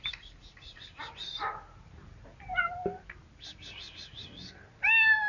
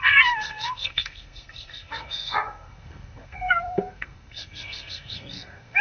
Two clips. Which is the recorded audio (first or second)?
first